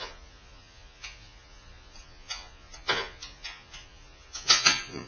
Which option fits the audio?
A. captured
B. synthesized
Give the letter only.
B